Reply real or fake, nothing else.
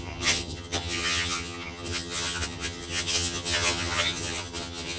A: fake